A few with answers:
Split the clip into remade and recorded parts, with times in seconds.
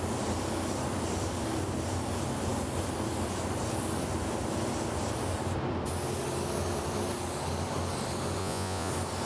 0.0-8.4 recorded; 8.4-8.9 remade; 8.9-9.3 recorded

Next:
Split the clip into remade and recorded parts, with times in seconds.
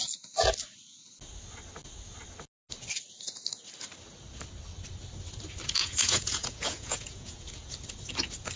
0.0-5.8 recorded; 5.8-7.7 remade; 7.7-8.6 recorded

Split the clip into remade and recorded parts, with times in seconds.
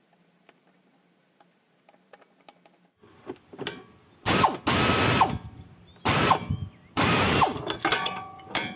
0.0-7.9 recorded; 7.9-8.4 remade; 8.4-8.8 recorded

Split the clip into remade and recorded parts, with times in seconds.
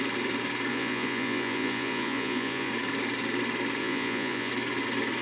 0.0-0.7 recorded; 0.7-2.7 remade; 2.7-3.8 recorded; 3.8-4.5 remade; 4.5-5.2 recorded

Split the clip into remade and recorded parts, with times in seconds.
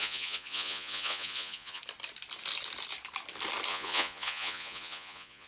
0.0-1.8 remade; 1.8-3.7 recorded; 3.7-5.5 remade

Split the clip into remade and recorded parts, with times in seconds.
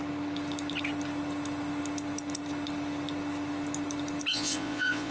0.0-4.3 recorded; 4.3-5.1 remade